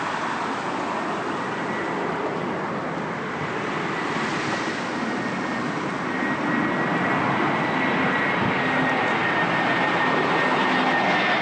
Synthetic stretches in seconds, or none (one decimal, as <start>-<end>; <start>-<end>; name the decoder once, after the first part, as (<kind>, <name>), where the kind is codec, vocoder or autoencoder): none